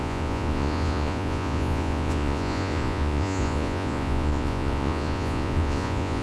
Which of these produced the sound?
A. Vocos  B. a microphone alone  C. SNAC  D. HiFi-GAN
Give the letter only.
A